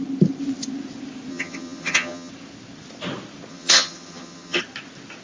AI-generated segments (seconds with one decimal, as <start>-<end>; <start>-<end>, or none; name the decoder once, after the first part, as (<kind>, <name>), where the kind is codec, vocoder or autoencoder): 1.3-2.3 (vocoder, HiFi-GAN); 3.5-4.6